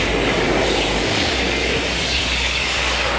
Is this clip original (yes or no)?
no